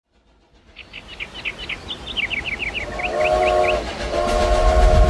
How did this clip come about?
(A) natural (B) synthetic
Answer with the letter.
A